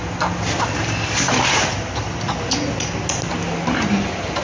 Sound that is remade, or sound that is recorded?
recorded